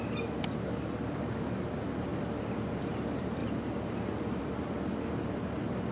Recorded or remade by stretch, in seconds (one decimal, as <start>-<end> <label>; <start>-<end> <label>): 0.0-5.9 recorded